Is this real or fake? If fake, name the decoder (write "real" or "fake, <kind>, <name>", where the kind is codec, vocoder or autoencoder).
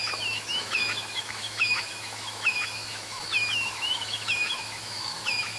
fake, autoencoder, DAC-VAE